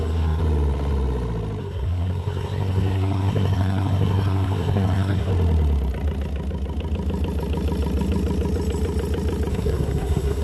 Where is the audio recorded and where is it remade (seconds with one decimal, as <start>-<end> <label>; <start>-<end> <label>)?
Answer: 0.0-0.4 remade; 0.4-1.6 recorded; 1.6-5.3 remade; 5.3-9.5 recorded; 9.5-10.4 remade

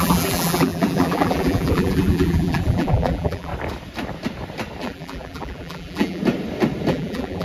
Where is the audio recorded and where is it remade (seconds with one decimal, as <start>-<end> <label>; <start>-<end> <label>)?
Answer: 0.0-3.5 remade; 3.5-4.8 recorded; 4.8-6.2 remade; 6.2-6.9 recorded; 6.9-7.4 remade

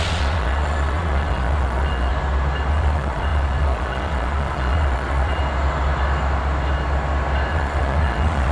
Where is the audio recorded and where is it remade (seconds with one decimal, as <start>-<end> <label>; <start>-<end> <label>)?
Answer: 0.0-2.1 remade; 2.1-2.7 recorded; 2.7-5.4 remade; 5.4-7.5 recorded; 7.5-8.5 remade